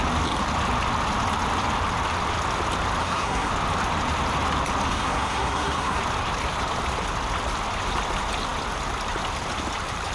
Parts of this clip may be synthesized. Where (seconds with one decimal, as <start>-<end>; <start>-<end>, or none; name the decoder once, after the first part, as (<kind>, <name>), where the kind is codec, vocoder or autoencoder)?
3.0-3.5 (codec, SNAC); 4.9-6.0